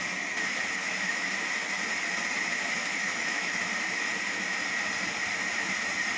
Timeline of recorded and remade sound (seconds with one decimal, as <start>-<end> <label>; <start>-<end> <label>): 0.0-0.8 recorded; 0.8-1.3 remade; 1.3-2.8 recorded; 2.8-3.5 remade; 3.5-6.2 recorded